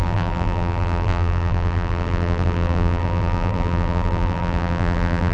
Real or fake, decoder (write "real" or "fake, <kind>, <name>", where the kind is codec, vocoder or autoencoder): fake, vocoder, BigVGAN v2